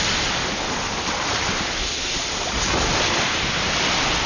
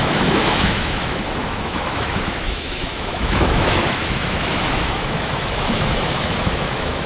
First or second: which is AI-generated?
second